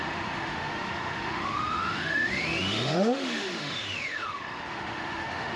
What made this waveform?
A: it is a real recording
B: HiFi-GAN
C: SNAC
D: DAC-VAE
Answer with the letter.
D